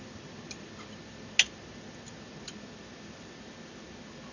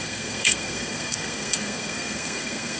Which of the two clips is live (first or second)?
first